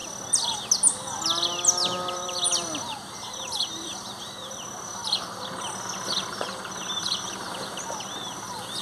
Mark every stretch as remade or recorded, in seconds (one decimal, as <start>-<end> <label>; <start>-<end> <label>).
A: 0.0-2.1 recorded; 2.1-5.0 remade; 5.0-6.3 recorded; 6.3-8.8 remade